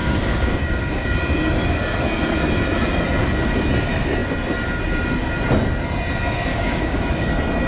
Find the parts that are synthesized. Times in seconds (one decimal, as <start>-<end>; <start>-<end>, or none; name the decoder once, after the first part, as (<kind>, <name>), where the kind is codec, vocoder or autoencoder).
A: 0.0-1.2 (codec, DAC); 6.5-7.3